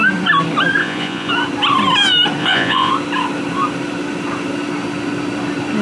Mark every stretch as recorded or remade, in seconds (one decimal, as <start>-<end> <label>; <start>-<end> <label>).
0.0-0.8 recorded; 0.8-1.3 remade; 1.3-2.4 recorded; 2.4-2.9 remade; 2.9-5.8 recorded